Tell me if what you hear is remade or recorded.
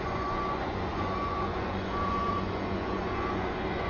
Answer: remade